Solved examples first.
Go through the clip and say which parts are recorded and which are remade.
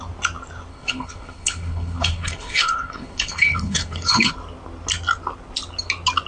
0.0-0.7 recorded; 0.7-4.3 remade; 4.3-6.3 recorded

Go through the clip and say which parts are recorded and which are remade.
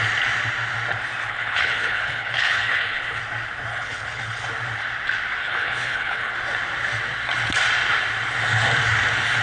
0.0-1.2 recorded; 1.2-3.2 remade; 3.2-3.7 recorded; 3.7-4.4 remade; 4.4-5.4 recorded; 5.4-6.3 remade; 6.3-9.4 recorded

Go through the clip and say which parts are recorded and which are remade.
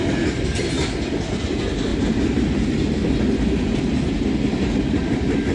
0.0-5.5 recorded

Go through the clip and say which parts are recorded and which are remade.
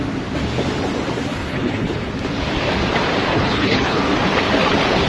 0.0-1.3 recorded; 1.3-2.1 remade; 2.1-3.3 recorded; 3.3-4.0 remade; 4.0-5.1 recorded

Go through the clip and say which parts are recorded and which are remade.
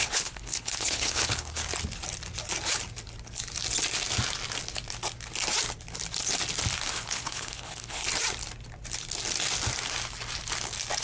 0.0-1.6 remade; 1.6-6.9 recorded; 6.9-8.0 remade; 8.0-11.0 recorded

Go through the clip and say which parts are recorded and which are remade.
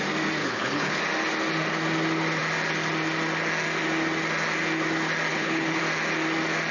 0.0-0.4 recorded; 0.4-1.0 remade; 1.0-5.3 recorded; 5.3-5.8 remade; 5.8-6.7 recorded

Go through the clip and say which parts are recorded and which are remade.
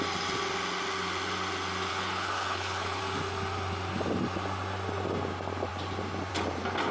0.0-1.9 recorded; 1.9-3.0 remade; 3.0-6.9 recorded